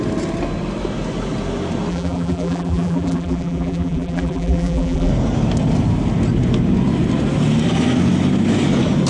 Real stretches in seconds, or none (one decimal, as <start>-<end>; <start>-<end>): 0.0-1.9; 5.1-9.1